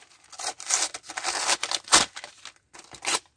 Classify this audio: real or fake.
real